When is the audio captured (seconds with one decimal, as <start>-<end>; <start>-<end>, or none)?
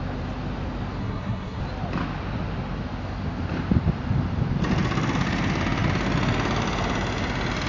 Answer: 0.0-1.0; 1.6-7.7